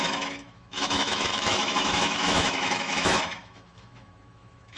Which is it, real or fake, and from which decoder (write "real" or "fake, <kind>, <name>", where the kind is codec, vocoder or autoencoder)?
fake, autoencoder, DAC-VAE